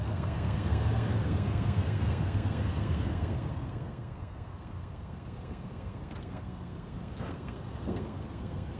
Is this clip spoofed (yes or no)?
yes